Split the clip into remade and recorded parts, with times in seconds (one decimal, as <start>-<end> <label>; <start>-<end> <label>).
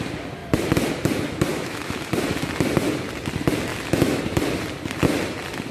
0.0-1.5 recorded; 1.5-2.1 remade; 2.1-3.7 recorded; 3.7-4.2 remade; 4.2-5.7 recorded